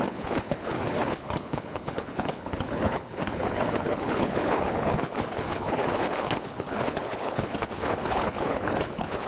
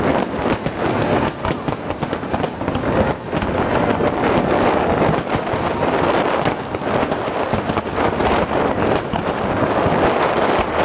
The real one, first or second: second